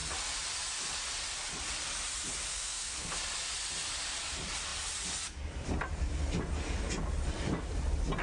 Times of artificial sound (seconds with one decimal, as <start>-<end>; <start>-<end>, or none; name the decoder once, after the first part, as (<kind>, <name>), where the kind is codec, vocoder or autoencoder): 2.5-3.1 (codec, SNAC)